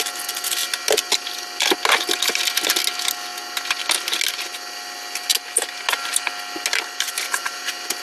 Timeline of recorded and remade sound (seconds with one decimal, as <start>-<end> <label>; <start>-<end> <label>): 0.0-8.0 recorded